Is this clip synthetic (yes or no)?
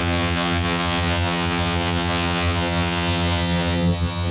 yes